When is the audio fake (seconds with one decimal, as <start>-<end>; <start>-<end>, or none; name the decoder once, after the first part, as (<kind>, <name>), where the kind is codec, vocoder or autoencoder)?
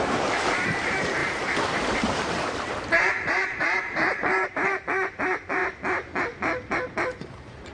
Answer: 0.0-5.6 (vocoder, BigVGAN v2); 6.2-7.7